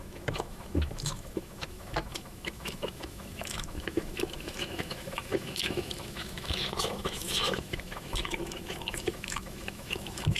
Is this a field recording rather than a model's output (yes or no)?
no